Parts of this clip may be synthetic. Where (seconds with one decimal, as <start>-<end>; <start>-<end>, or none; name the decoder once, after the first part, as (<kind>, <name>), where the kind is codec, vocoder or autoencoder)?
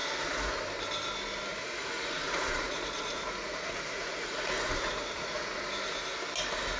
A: 0.0-0.6 (vocoder, Vocos); 1.5-5.6